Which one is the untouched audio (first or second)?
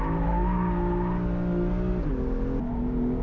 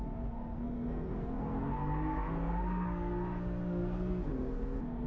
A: first